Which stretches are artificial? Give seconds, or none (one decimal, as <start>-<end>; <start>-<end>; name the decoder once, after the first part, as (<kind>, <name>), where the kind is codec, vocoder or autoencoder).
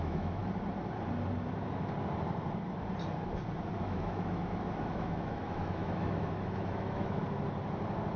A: 0.0-0.4 (autoencoder, DAC-VAE); 3.8-7.2